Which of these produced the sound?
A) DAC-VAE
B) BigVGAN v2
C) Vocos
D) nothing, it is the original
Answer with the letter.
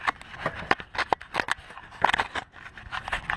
D